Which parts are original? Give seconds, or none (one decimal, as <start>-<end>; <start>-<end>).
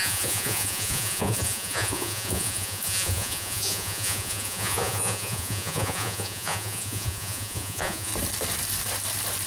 8.1-9.5